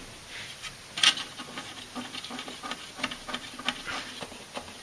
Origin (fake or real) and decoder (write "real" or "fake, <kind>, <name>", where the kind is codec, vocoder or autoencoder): real